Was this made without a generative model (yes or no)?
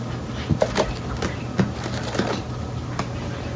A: yes